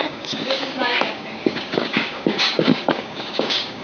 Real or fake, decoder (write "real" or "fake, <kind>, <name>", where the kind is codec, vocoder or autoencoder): fake, codec, DAC